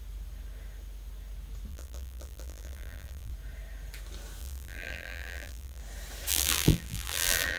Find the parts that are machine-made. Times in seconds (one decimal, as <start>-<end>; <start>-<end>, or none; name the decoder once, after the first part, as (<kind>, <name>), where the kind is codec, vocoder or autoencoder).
1.7-3.3 (vocoder, BigVGAN v2); 4.4-5.8; 6.3-7.6